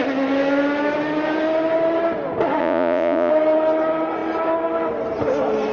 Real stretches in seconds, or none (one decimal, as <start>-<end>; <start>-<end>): 0.0-2.6; 3.3-5.7